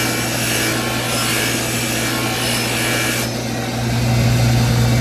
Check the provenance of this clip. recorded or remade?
recorded